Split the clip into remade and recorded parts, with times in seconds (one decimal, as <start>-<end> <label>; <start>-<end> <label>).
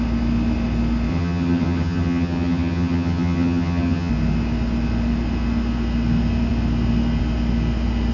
0.0-1.1 recorded; 1.1-4.1 remade; 4.1-8.1 recorded